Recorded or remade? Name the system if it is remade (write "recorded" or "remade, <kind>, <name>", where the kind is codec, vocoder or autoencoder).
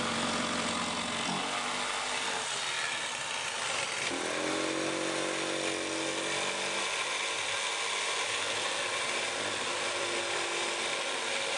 recorded